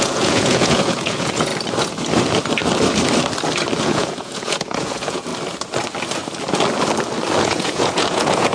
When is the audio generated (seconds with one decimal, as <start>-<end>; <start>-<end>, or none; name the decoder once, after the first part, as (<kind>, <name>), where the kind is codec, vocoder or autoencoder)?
0.0-1.5 (vocoder, Vocos); 3.8-5.3; 7.4-8.5